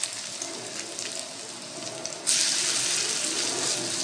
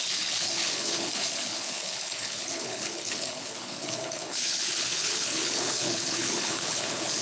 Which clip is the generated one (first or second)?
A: second